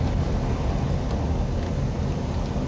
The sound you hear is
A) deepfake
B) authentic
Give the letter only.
B